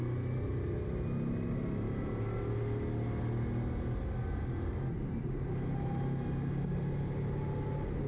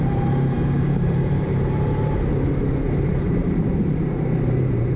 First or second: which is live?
first